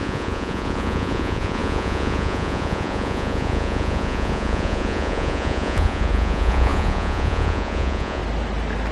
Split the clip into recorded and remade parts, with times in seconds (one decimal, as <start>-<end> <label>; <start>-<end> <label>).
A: 0.0-8.2 remade; 8.2-8.9 recorded